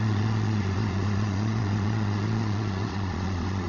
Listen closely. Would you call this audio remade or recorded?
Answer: remade